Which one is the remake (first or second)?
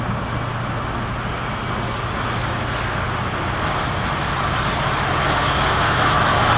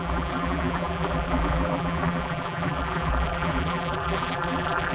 second